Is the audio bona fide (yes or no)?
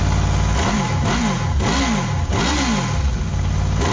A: yes